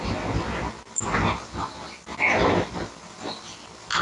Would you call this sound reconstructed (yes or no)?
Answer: no